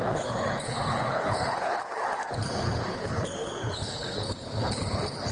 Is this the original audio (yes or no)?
no